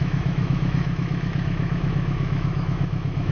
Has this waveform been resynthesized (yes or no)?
yes